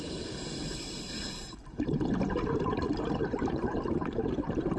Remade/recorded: remade